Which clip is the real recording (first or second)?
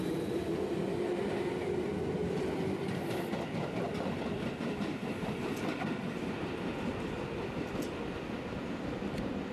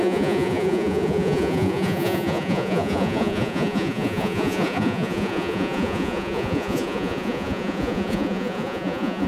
first